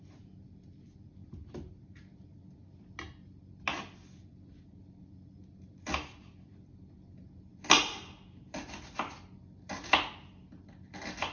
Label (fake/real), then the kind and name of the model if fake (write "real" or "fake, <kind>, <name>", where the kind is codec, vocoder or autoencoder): real